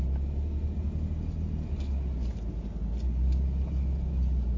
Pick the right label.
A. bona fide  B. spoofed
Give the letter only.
A